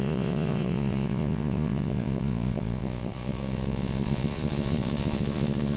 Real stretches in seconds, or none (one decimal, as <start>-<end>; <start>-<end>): none